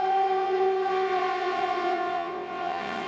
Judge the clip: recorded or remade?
remade